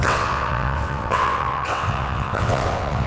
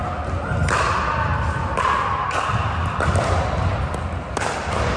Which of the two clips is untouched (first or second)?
second